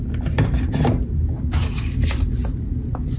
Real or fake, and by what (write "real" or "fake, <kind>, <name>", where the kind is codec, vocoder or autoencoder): real